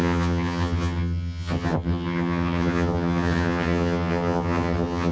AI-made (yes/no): yes